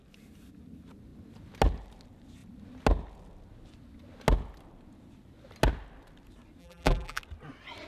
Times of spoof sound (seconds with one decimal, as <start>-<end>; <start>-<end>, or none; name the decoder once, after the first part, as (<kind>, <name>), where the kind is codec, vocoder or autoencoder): 6.6-7.2 (vocoder, BigVGAN v2)